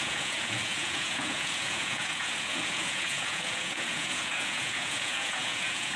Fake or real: fake